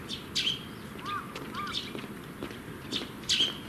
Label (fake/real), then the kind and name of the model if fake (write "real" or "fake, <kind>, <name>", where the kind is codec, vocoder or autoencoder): real